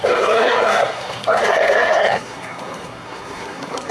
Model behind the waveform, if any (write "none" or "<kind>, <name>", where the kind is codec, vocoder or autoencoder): codec, SNAC